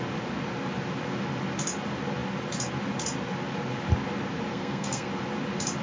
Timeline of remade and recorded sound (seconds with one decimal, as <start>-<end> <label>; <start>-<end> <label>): 0.0-4.5 recorded; 4.5-5.1 remade; 5.1-5.8 recorded

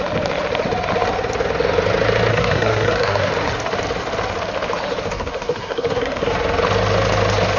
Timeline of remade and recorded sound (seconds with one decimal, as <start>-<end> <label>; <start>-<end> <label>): 0.0-2.3 recorded; 2.3-3.3 remade; 3.3-5.1 recorded; 5.1-6.3 remade; 6.3-7.6 recorded

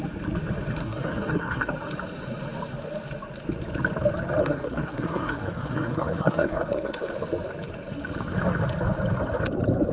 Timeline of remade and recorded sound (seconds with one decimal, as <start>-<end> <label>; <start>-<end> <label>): 0.0-0.8 recorded; 0.8-1.7 remade; 1.7-4.4 recorded; 4.4-7.1 remade; 7.1-9.9 recorded

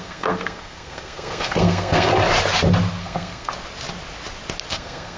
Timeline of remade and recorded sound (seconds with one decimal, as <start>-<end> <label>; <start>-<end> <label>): 0.0-2.1 remade; 2.1-3.0 recorded; 3.0-3.5 remade; 3.5-4.7 recorded; 4.7-5.2 remade

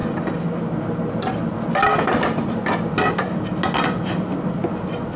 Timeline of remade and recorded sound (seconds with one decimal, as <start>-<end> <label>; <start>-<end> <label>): 0.0-5.2 recorded

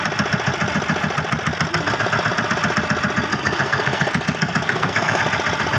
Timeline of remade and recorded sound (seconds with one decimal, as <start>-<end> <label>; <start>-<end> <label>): 0.0-3.3 recorded; 3.3-5.2 remade; 5.2-5.8 recorded